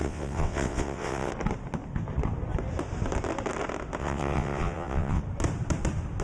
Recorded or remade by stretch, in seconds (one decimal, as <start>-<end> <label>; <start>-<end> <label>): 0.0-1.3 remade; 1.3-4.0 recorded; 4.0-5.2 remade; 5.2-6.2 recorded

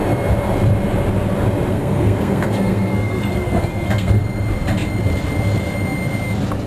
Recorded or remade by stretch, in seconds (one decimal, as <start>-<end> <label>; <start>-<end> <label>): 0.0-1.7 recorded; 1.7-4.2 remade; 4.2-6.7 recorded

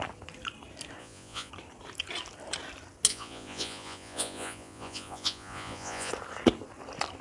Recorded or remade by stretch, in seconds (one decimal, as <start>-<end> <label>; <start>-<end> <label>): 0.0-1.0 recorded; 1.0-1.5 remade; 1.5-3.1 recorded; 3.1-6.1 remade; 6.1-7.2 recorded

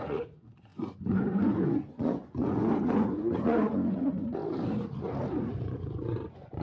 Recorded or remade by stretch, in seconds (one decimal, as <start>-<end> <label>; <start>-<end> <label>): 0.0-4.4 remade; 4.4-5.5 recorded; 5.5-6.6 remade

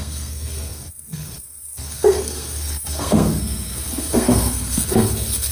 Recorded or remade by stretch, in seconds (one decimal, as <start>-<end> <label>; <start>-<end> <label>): 0.0-5.5 remade

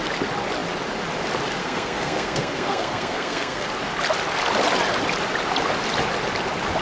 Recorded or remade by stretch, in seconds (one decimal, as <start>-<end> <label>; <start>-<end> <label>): 0.0-1.6 recorded; 1.6-3.7 remade; 3.7-6.8 recorded